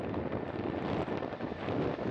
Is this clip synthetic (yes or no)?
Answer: no